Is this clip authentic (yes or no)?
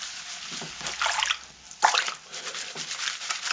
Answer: yes